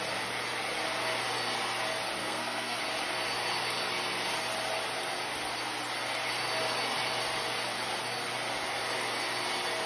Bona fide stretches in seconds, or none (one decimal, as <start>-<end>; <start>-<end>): 0.0-2.2; 2.8-9.9